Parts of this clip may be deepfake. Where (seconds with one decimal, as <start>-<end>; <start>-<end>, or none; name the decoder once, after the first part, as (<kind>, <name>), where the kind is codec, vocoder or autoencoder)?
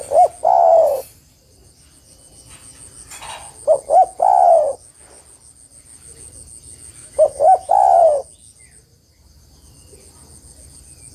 7.0-7.7 (autoencoder, DAC-VAE)